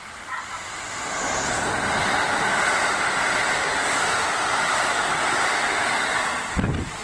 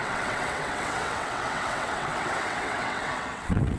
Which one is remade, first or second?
second